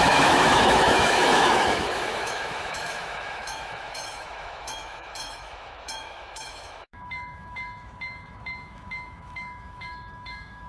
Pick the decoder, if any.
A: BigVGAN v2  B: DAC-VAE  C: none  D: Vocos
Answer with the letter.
B